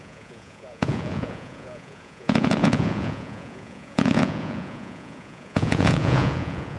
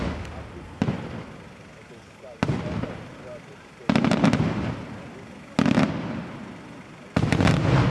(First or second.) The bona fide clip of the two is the second